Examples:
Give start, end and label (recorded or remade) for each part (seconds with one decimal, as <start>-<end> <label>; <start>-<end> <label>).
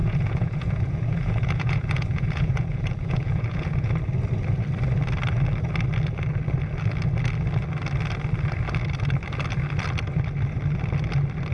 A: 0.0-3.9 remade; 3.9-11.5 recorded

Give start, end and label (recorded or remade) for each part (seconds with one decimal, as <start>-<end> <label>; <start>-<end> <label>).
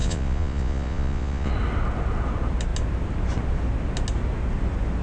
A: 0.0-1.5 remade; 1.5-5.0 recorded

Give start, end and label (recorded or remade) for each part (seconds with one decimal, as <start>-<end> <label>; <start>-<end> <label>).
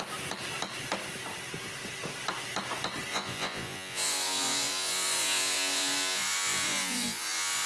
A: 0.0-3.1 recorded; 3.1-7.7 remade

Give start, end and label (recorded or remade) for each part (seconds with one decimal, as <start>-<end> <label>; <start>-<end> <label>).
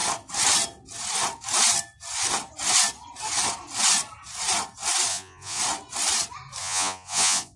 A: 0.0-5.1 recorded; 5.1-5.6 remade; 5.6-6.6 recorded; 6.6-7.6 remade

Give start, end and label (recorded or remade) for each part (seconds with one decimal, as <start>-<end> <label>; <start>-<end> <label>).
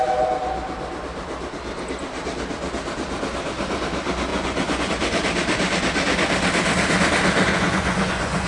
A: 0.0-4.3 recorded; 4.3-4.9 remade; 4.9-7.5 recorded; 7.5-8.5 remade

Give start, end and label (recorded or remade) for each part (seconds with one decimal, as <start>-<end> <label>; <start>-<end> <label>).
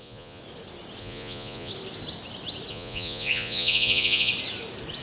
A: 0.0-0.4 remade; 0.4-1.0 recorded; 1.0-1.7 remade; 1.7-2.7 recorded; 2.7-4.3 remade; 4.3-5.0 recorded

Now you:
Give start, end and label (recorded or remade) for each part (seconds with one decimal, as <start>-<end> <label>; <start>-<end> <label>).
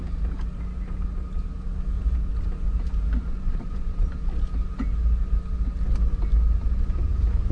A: 0.0-3.3 recorded; 3.3-4.1 remade; 4.1-7.5 recorded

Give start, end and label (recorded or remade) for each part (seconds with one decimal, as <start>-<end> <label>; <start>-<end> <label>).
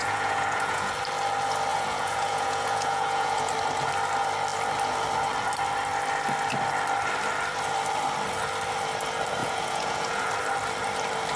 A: 0.0-0.9 remade; 0.9-1.7 recorded; 1.7-3.5 remade; 3.5-9.4 recorded; 9.4-10.3 remade; 10.3-11.4 recorded